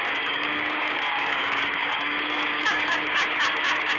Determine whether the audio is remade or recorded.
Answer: remade